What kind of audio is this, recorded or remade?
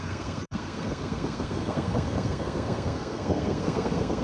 remade